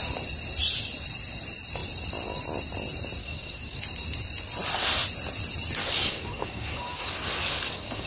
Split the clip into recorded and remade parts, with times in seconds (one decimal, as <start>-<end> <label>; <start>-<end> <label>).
0.0-3.2 recorded; 3.2-3.8 remade; 3.8-5.8 recorded; 5.8-8.1 remade